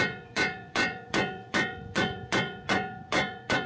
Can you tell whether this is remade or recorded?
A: remade